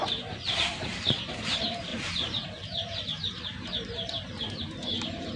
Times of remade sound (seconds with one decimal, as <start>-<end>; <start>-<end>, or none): 0.0-5.4